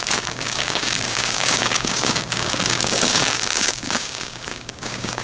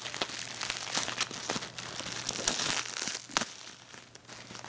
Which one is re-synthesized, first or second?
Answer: first